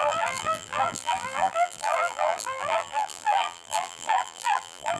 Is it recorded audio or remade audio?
remade